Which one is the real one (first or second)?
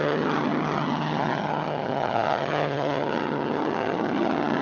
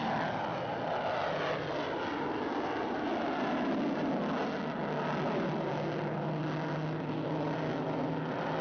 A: second